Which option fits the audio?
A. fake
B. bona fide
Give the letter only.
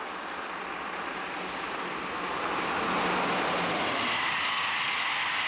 B